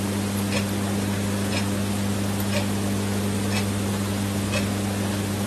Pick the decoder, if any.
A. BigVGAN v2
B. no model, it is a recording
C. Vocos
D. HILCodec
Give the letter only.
B